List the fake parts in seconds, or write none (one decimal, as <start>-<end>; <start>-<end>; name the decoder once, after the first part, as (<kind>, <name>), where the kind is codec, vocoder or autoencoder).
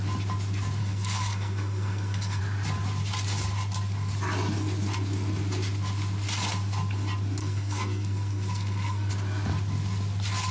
0.8-2.4 (codec, SNAC); 7.4-9.1